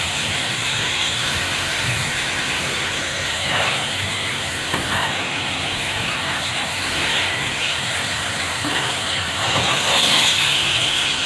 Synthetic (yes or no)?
yes